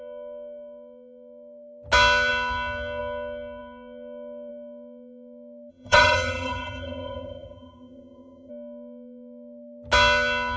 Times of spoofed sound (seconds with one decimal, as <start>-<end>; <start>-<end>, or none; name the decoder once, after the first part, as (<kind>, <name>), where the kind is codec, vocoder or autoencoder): 5.7-8.5 (vocoder, HiFi-GAN)